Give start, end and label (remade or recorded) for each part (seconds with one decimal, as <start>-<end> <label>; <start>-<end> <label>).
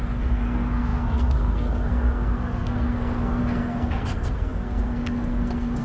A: 0.0-5.8 remade